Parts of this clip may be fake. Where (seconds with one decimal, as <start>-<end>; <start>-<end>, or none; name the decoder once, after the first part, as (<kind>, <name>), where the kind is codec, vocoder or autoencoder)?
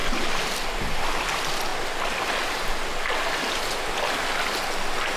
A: none